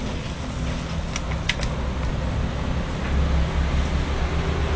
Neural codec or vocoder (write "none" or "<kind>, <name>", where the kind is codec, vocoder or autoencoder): none